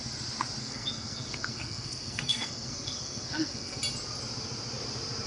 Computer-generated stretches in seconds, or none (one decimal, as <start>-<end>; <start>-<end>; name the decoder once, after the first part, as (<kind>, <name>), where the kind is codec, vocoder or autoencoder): 0.6-3.8 (codec, SNAC)